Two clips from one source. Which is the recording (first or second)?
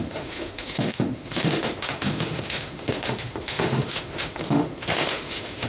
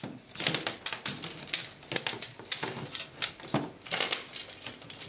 second